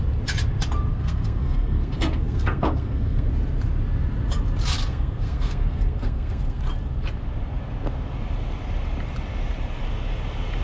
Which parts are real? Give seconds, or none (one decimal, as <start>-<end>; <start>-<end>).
0.0-0.9; 3.3-4.9; 6.6-10.6

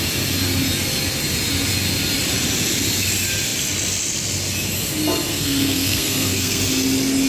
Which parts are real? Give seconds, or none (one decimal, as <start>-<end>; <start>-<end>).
0.0-5.3; 6.6-7.3